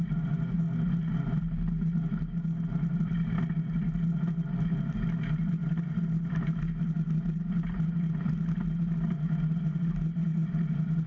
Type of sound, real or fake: real